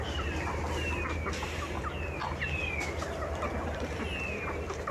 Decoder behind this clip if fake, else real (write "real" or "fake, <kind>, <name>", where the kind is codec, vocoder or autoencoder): real